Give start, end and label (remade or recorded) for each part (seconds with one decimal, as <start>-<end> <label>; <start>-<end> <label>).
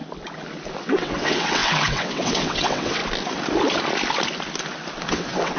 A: 0.0-0.8 recorded; 0.8-3.0 remade; 3.0-5.1 recorded; 5.1-5.6 remade